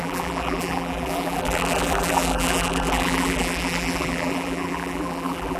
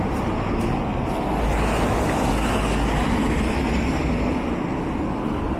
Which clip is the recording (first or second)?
second